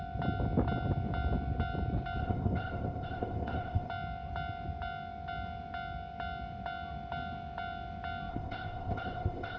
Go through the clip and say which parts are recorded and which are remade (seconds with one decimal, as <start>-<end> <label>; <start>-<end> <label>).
0.0-2.2 recorded; 2.2-3.9 remade; 3.9-8.3 recorded; 8.3-9.6 remade